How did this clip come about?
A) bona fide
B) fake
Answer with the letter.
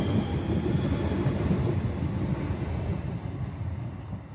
A